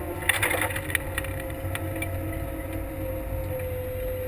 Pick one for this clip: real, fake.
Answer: real